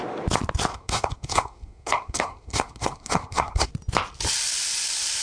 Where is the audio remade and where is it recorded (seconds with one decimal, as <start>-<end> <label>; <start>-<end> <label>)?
0.0-0.7 recorded; 0.7-3.7 remade; 3.7-5.2 recorded